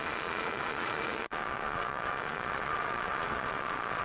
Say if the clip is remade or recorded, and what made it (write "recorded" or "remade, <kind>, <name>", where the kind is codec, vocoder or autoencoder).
remade, vocoder, Vocos